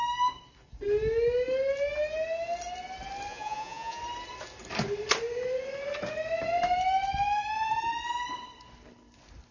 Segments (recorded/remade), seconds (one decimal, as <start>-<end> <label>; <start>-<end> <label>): 0.0-3.3 recorded; 3.3-4.0 remade; 4.0-9.5 recorded